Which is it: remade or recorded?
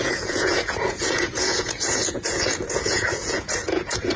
remade